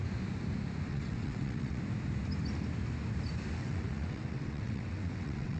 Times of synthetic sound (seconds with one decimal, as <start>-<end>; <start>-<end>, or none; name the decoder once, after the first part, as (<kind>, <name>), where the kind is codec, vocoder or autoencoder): 0.9-1.8 (vocoder, WaveNeXt); 3.6-5.6